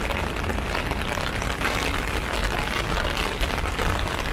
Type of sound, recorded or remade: recorded